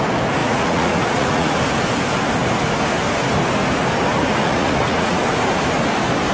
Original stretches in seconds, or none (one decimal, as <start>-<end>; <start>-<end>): 0.0-0.4; 1.6-4.2; 5.2-6.3